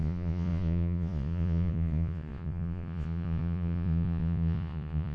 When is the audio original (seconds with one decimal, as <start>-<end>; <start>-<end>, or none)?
none